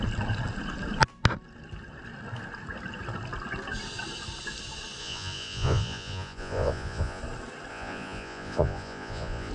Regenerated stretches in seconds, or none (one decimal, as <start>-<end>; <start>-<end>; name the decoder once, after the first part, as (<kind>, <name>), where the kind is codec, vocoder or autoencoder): 5.0-7.2 (vocoder, Vocos); 7.7-9.5